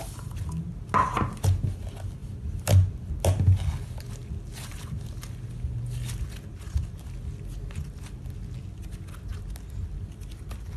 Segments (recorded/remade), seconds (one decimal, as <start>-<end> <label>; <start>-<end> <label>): 0.0-10.8 recorded